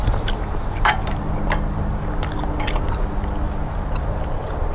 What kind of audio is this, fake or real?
real